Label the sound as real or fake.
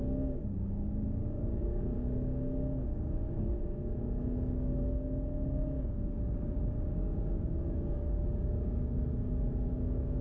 fake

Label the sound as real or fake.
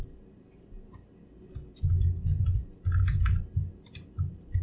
real